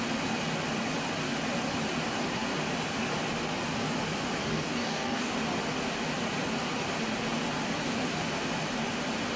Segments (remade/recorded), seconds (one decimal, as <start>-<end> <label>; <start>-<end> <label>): 0.0-4.4 recorded; 4.4-5.3 remade; 5.3-9.4 recorded